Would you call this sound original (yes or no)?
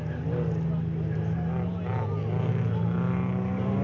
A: yes